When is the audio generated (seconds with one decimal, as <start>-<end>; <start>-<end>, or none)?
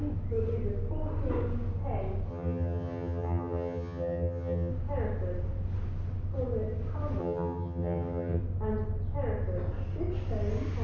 2.3-4.7; 7.2-8.4